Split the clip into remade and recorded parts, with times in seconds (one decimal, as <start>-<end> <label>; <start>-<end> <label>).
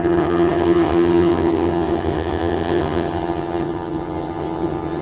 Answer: 0.0-5.0 remade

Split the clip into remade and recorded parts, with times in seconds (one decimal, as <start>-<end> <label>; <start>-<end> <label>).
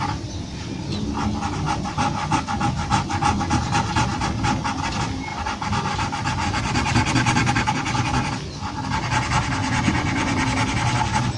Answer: 0.0-9.6 recorded; 9.6-10.4 remade; 10.4-11.4 recorded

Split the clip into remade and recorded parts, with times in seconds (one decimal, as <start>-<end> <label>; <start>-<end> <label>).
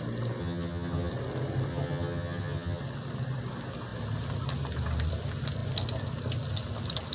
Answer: 0.0-0.4 recorded; 0.4-1.1 remade; 1.1-1.7 recorded; 1.7-2.8 remade; 2.8-7.1 recorded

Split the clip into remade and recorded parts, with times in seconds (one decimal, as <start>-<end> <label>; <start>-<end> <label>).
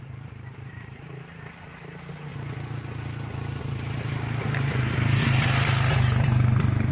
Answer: 0.0-2.3 remade; 2.3-3.6 recorded; 3.6-5.2 remade; 5.2-6.9 recorded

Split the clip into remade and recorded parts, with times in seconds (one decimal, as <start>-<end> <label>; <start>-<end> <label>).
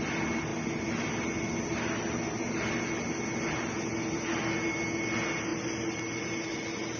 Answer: 0.0-7.0 recorded